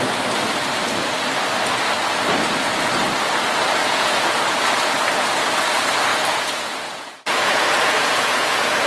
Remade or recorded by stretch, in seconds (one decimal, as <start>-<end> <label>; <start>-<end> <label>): 0.0-3.8 recorded; 3.8-4.4 remade; 4.4-6.1 recorded; 6.1-8.9 remade